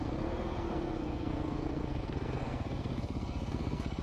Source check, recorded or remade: remade